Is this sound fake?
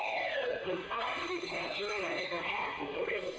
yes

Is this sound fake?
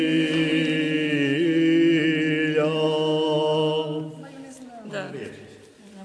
no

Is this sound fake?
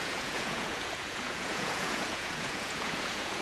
yes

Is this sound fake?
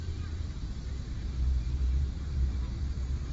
yes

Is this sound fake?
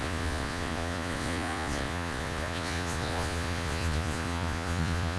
yes